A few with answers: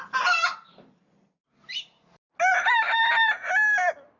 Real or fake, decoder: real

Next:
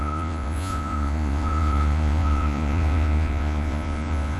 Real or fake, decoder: fake, vocoder, Vocos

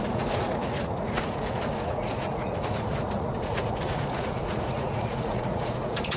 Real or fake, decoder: fake, vocoder, Vocos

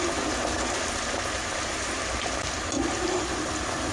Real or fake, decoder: real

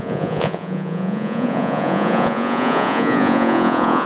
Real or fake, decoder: fake, vocoder, Vocos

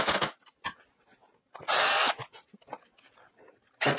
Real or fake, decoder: real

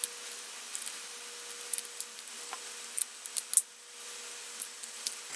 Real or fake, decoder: real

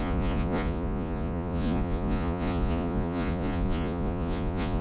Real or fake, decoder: fake, vocoder, Vocos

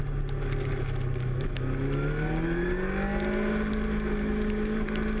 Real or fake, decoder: real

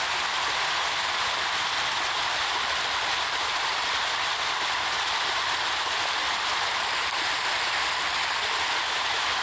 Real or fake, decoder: real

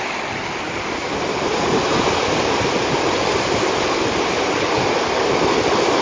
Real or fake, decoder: real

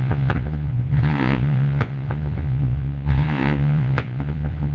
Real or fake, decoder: fake, vocoder, Vocos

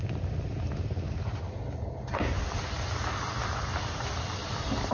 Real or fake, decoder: real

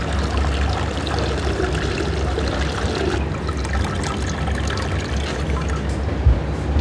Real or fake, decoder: real